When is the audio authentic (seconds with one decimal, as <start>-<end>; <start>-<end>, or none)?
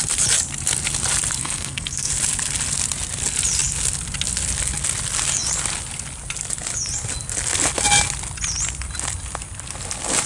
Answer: 0.0-1.4; 2.1-10.3